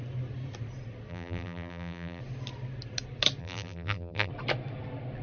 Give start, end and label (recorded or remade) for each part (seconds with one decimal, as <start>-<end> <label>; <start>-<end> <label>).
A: 0.0-1.1 recorded; 1.1-2.2 remade; 2.2-3.4 recorded; 3.4-4.3 remade; 4.3-5.2 recorded